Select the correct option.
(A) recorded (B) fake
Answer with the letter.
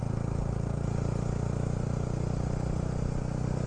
A